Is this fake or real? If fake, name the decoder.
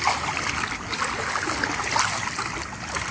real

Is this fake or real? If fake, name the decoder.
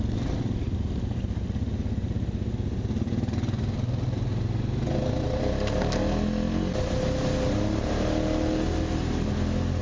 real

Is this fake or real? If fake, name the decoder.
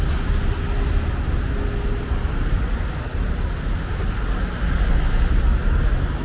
real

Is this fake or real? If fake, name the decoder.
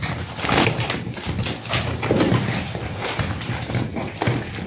real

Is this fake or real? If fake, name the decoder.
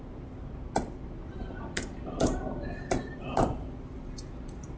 real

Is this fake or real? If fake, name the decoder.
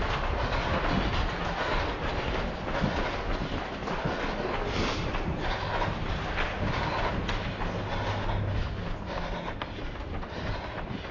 real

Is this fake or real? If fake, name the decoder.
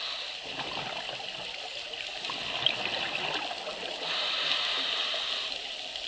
real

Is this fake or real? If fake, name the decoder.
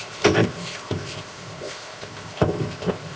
fake, codec, ZipCodec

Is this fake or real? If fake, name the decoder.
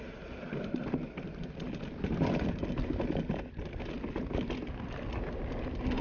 real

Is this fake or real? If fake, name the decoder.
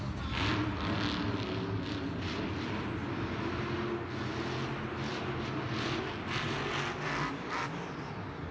real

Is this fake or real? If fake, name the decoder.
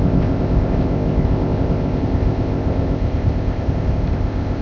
fake, codec, ZipCodec